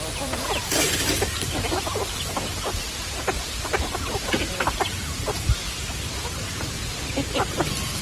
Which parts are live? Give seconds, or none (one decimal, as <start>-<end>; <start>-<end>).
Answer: 0.0-8.0